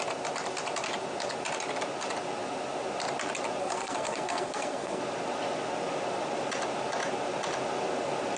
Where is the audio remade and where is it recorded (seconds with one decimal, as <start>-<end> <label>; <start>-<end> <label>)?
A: 0.0-3.6 recorded; 3.6-5.0 remade; 5.0-8.4 recorded